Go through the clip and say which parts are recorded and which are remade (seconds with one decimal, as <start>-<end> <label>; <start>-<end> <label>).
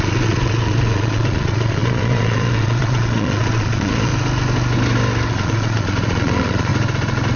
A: 0.0-4.1 remade; 4.1-5.3 recorded; 5.3-6.7 remade; 6.7-7.4 recorded